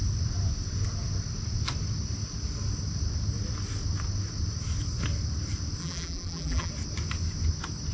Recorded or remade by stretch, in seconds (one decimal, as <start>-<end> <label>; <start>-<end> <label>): 0.0-5.8 recorded; 5.8-6.7 remade; 6.7-7.9 recorded